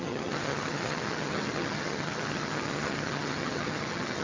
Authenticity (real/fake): fake